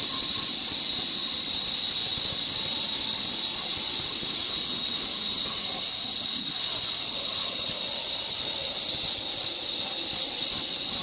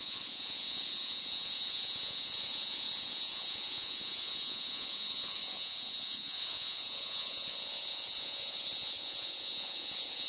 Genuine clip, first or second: first